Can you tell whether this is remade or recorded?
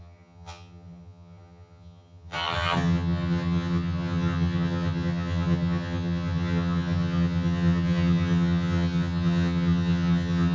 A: remade